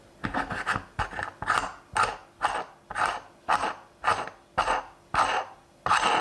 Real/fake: real